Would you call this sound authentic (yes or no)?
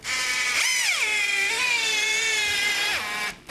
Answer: yes